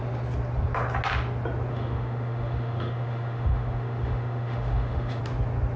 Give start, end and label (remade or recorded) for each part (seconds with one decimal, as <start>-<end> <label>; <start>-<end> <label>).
0.0-1.7 recorded; 1.7-5.2 remade; 5.2-5.8 recorded